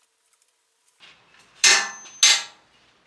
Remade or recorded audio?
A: recorded